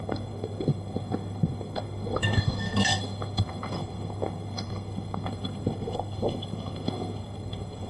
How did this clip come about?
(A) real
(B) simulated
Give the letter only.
B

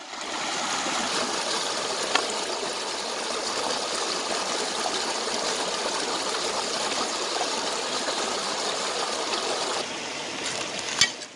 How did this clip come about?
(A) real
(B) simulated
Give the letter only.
A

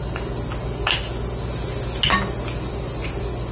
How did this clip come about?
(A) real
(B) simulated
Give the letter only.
A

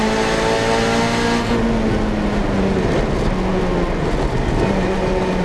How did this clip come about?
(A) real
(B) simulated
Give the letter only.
A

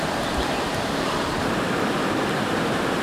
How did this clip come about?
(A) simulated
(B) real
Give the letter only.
A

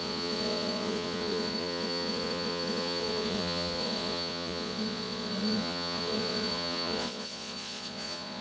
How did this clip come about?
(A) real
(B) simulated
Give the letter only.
B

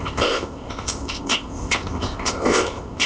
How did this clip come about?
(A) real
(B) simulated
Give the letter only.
B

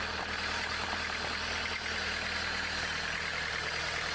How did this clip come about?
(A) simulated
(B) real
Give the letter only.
B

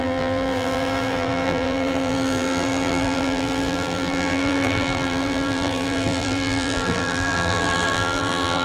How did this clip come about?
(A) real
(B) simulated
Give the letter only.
B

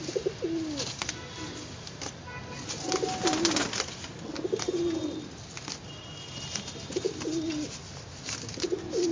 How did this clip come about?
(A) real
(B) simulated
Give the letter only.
A